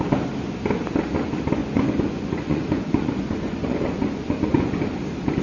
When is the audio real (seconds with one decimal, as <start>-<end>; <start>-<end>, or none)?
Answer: 0.0-1.6; 4.8-5.4